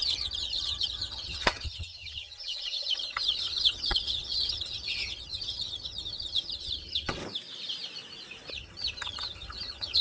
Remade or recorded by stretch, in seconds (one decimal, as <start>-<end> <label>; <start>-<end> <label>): 0.0-7.2 remade; 7.2-8.5 recorded; 8.5-10.0 remade